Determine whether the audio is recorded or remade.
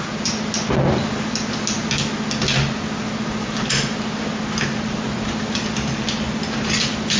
recorded